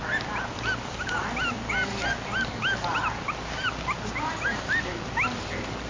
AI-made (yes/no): no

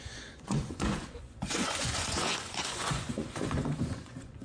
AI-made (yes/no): yes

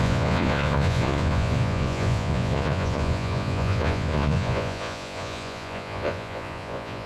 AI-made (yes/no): yes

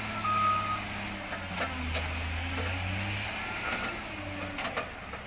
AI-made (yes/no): no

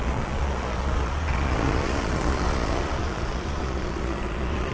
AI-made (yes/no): yes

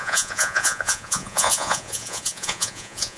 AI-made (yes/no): yes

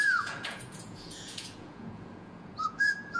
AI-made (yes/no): yes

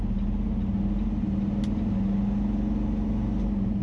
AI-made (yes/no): no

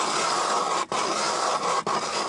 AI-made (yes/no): no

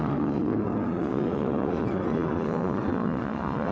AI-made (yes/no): yes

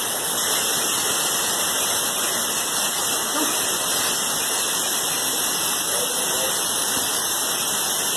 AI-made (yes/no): no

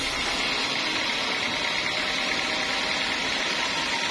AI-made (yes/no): no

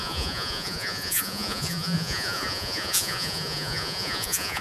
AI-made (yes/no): yes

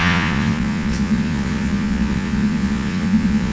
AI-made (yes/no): yes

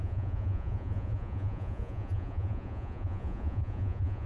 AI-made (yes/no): yes